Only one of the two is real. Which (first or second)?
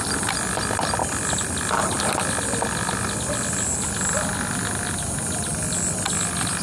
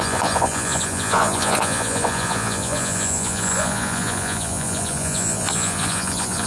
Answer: first